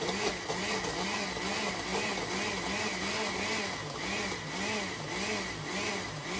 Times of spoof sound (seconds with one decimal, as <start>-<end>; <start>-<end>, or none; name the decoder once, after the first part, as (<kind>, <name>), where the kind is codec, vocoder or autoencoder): none